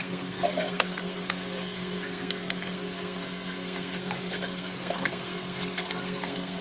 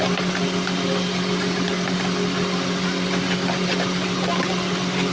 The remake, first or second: first